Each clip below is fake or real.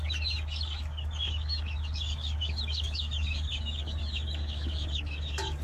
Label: fake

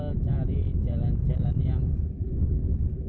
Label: real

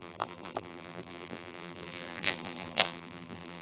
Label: fake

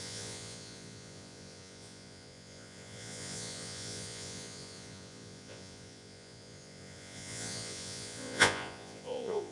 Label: fake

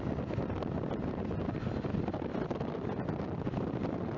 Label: real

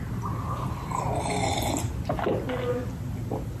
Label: real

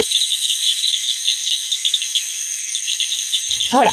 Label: fake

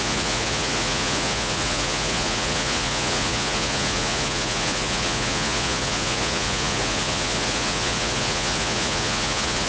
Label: fake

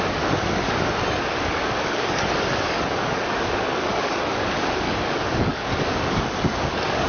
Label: fake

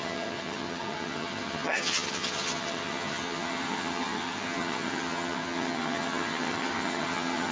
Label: fake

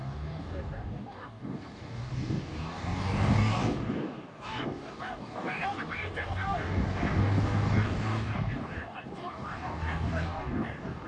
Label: fake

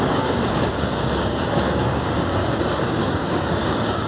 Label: fake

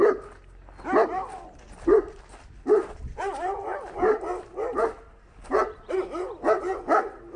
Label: real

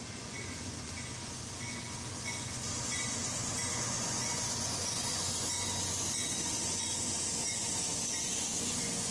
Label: fake